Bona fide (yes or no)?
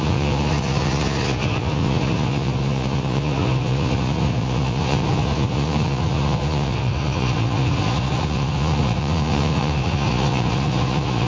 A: no